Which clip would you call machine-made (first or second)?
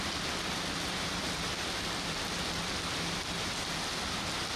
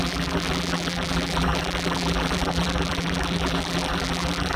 second